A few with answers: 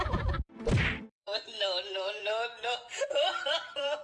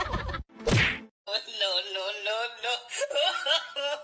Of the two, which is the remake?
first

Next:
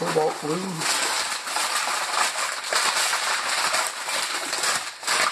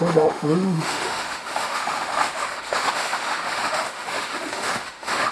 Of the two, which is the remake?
second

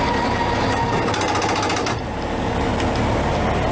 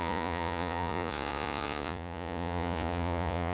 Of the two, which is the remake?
second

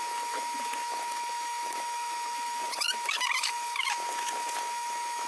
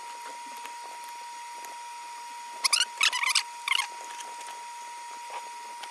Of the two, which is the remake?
first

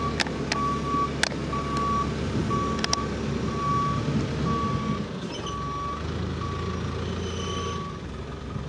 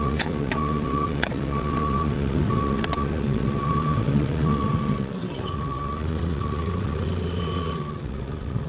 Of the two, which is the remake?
second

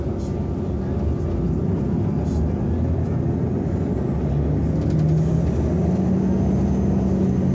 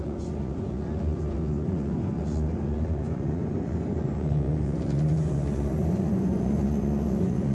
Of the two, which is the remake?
second